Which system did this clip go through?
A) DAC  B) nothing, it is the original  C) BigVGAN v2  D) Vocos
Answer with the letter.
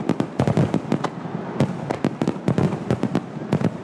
B